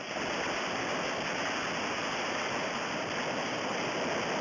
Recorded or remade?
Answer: recorded